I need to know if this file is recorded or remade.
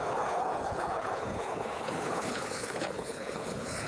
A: remade